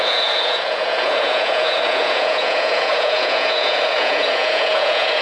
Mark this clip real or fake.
fake